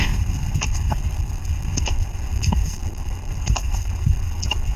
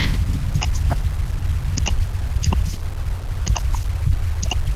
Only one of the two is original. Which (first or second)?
second